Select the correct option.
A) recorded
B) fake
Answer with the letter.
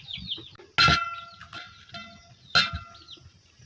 A